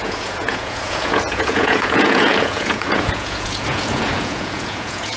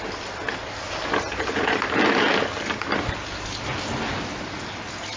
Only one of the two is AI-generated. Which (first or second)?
first